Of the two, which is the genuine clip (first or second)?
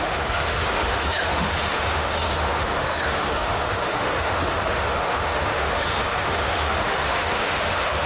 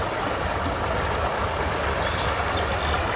second